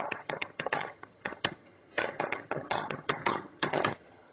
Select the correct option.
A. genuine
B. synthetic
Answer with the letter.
B